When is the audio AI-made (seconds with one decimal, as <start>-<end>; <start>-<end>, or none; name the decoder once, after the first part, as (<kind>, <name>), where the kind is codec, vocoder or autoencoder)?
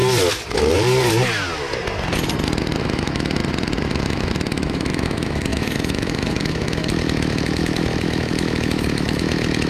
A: 2.8-3.4 (autoencoder, DAC-VAE); 3.9-9.7